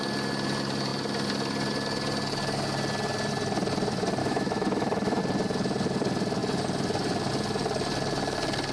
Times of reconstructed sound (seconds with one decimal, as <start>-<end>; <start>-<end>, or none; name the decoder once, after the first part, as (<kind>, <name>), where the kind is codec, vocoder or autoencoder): 4.2-5.2 (autoencoder, DAC-VAE)